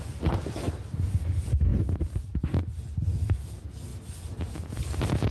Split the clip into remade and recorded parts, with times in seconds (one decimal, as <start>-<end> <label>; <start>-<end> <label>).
0.0-5.3 recorded